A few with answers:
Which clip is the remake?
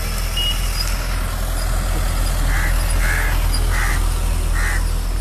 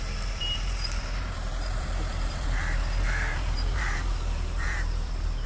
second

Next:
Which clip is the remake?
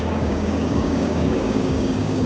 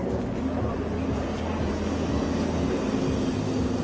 first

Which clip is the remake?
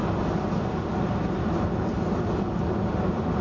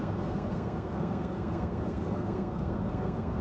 second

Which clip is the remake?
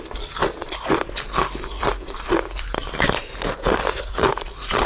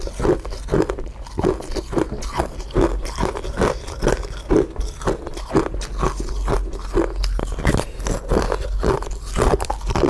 first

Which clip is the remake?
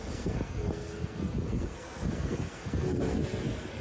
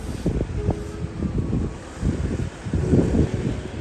first